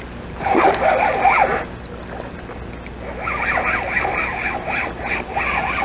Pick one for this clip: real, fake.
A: real